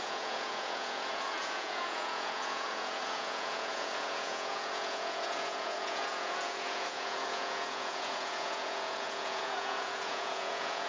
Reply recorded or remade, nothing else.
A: remade